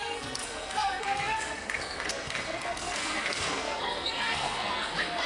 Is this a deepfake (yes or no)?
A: yes